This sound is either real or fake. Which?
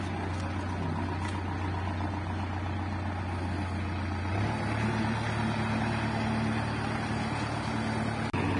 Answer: real